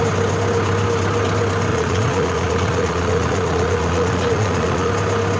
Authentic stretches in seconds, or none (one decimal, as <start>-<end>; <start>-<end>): 0.0-1.7; 4.9-5.4